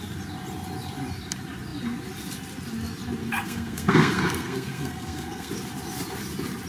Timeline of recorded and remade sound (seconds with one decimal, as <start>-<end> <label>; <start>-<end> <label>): 0.0-3.2 recorded; 3.2-5.5 remade; 5.5-6.7 recorded